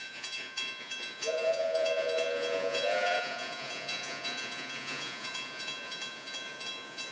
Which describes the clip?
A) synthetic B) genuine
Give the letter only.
A